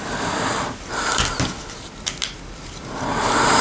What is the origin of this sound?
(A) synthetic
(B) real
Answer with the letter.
B